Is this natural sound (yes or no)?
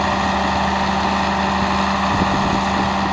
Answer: yes